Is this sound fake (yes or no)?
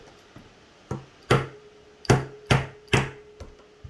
no